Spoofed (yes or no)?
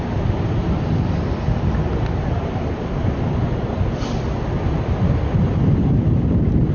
no